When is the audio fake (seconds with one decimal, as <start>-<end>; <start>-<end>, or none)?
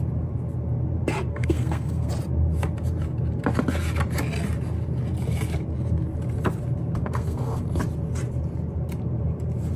1.3-2.1; 7.0-7.6